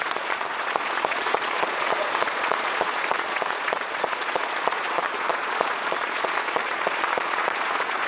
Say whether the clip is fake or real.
fake